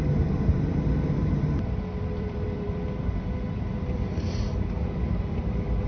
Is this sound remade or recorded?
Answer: remade